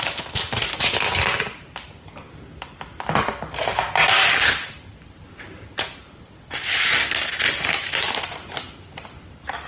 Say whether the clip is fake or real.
real